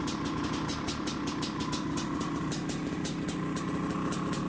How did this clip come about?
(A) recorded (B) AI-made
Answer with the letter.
A